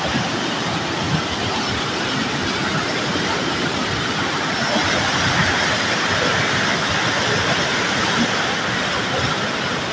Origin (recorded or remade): recorded